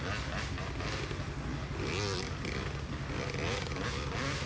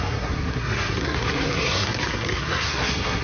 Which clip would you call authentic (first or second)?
first